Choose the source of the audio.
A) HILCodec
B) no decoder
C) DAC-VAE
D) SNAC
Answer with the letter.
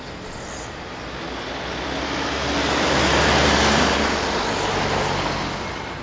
B